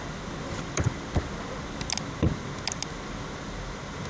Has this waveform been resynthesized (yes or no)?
no